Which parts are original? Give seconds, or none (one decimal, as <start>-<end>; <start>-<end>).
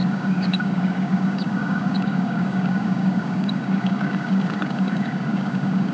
none